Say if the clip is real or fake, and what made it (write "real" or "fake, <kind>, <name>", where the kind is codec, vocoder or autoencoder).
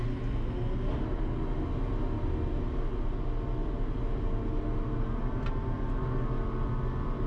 real